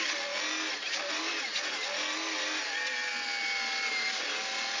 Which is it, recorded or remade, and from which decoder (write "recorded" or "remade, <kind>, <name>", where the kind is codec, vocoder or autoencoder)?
recorded